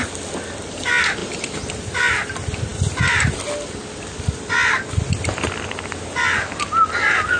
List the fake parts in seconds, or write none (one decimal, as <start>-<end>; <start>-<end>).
none